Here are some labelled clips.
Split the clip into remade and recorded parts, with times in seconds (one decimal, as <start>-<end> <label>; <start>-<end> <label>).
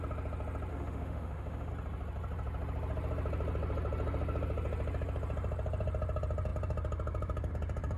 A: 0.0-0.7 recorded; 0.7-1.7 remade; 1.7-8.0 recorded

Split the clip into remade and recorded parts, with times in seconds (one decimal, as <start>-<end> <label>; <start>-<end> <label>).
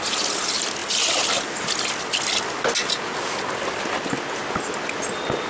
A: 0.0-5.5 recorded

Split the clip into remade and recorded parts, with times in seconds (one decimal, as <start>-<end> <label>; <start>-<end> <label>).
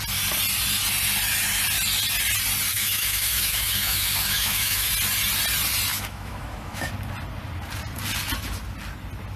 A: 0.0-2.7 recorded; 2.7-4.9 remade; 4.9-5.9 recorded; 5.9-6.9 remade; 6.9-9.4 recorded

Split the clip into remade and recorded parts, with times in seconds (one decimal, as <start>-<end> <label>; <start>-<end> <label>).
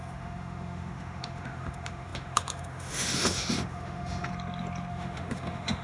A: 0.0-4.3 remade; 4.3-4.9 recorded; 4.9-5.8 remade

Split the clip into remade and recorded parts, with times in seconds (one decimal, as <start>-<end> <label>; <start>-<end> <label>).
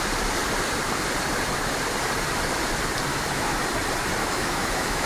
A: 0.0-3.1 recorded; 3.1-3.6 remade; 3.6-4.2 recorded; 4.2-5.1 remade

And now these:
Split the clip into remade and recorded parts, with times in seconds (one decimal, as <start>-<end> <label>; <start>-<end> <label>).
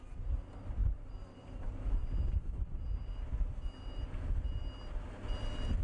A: 0.0-5.8 recorded